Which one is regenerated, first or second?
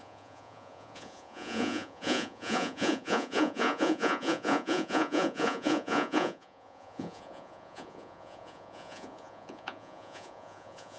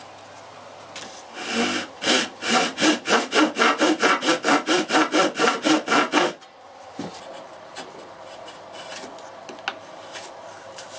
first